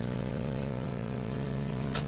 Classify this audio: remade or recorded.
remade